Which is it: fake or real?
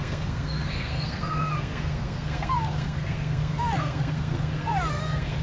fake